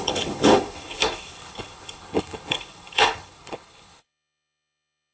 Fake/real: fake